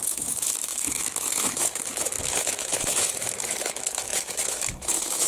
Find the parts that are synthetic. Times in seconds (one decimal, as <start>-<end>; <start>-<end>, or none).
0.0-5.3